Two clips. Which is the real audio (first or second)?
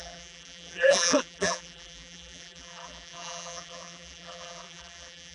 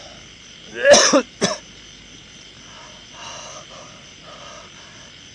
second